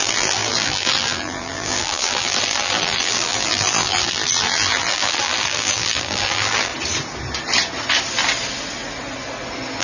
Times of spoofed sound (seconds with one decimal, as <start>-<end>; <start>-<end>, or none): 0.0-6.7